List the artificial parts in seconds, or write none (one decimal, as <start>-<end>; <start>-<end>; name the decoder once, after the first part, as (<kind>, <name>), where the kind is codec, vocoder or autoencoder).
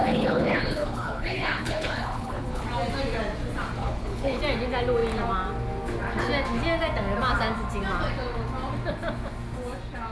0.0-2.6 (codec, HILCodec); 3.8-4.4